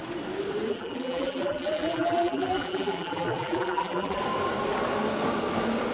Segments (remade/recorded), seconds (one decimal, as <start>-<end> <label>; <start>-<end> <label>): 0.0-0.7 recorded; 0.7-4.2 remade; 4.2-5.9 recorded